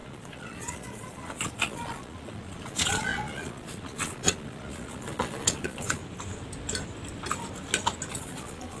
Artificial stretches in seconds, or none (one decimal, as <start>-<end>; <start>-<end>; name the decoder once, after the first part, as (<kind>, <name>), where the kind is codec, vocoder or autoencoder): 0.0-6.0 (vocoder, Vocos); 8.1-8.8